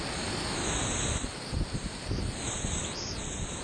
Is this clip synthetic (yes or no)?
no